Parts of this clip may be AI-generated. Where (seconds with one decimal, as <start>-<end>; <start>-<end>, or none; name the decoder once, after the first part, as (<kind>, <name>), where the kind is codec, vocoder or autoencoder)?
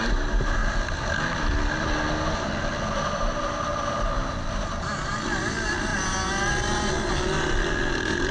none